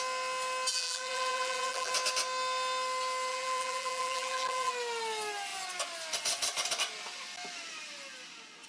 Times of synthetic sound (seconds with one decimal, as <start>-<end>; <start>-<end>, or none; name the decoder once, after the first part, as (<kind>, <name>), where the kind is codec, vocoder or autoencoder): 0.7-1.9 (vocoder, BigVGAN v2); 3.3-4.7